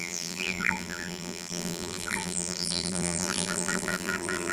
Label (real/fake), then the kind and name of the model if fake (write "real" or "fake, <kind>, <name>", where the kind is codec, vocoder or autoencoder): fake, vocoder, BigVGAN v2